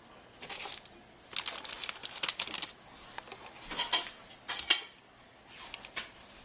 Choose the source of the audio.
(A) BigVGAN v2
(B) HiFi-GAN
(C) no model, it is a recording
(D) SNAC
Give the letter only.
C